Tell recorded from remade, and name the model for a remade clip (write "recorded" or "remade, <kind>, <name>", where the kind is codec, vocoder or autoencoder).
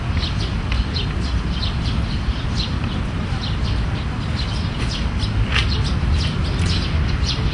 recorded